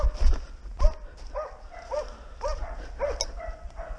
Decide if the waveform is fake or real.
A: real